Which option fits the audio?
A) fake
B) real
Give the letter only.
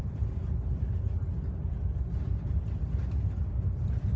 A